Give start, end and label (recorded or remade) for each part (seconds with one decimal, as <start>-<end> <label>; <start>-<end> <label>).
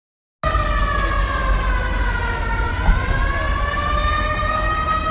0.0-5.1 recorded